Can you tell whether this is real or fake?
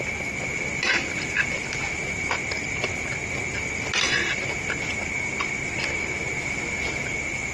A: real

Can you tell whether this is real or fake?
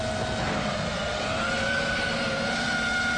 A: real